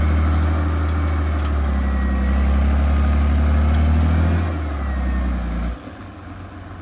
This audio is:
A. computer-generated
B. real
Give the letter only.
B